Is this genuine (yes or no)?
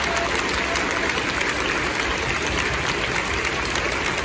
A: yes